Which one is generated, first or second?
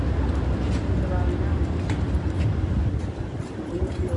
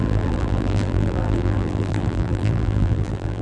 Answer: second